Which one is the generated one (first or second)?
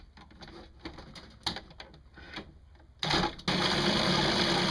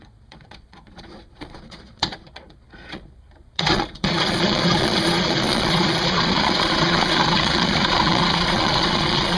second